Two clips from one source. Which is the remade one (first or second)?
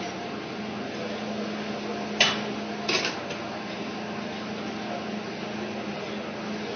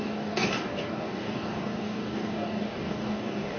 second